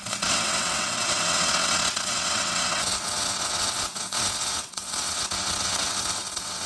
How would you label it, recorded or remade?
remade